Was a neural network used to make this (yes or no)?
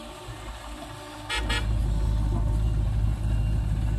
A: no